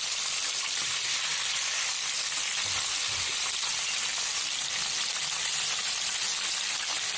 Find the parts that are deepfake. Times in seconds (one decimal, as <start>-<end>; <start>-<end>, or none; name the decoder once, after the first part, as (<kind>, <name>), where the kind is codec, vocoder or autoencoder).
none